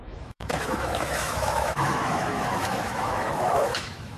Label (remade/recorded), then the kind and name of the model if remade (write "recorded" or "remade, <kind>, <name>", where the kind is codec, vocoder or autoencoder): remade, autoencoder, DAC-VAE